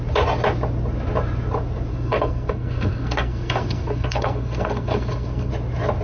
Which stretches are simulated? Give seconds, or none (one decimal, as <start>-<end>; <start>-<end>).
1.9-5.5